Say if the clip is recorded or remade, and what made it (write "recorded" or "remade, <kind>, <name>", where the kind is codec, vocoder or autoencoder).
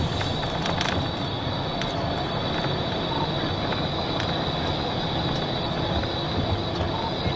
recorded